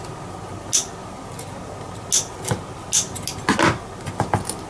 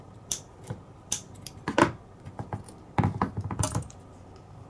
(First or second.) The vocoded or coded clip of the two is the second